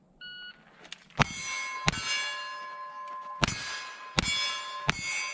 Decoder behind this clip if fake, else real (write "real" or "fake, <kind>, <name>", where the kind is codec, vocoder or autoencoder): real